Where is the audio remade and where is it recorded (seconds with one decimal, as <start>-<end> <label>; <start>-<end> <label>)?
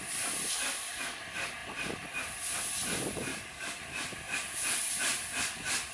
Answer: 0.0-3.3 recorded; 3.3-3.8 remade; 3.8-5.9 recorded